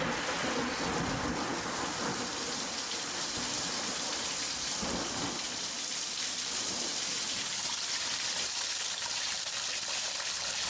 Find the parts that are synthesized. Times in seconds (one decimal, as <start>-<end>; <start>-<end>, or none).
0.0-1.5; 3.9-6.9; 8.5-10.7